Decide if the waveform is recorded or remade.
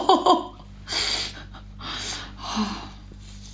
recorded